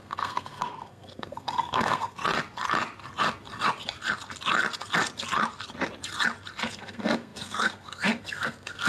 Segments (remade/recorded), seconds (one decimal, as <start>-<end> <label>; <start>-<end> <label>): 0.0-2.2 remade; 2.2-6.6 recorded; 6.6-8.9 remade